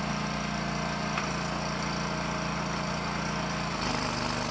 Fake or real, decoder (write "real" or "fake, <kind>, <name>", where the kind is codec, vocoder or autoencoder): real